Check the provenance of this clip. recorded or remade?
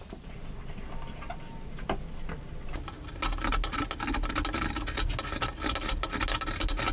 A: recorded